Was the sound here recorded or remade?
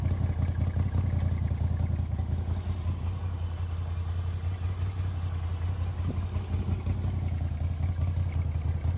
recorded